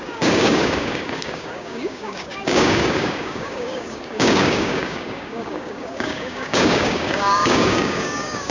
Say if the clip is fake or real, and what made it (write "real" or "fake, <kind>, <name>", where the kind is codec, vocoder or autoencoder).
fake, codec, DAC